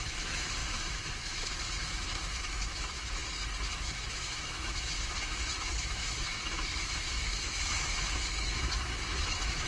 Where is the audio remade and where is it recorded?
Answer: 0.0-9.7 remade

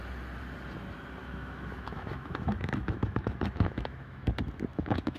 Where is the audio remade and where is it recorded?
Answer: 0.0-1.2 recorded; 1.2-4.3 remade; 4.3-4.7 recorded; 4.7-5.2 remade

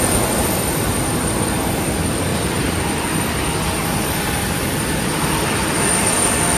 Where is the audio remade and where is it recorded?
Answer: 0.0-6.6 recorded

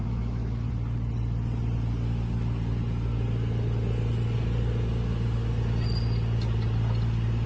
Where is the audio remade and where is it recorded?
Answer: 0.0-0.7 remade; 0.7-7.5 recorded

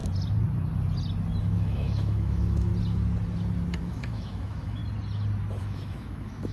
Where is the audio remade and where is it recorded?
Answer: 0.0-1.4 recorded; 1.4-2.7 remade; 2.7-3.8 recorded; 3.8-4.8 remade; 4.8-5.6 recorded; 5.6-6.5 remade

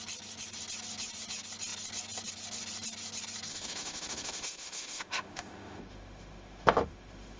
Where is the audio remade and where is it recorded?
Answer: 0.0-3.5 recorded; 3.5-7.4 remade

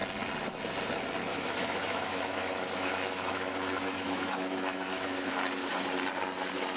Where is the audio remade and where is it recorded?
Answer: 0.0-1.3 recorded; 1.3-5.3 remade; 5.3-6.8 recorded